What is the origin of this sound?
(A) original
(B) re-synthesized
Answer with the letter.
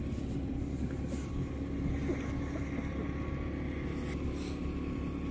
A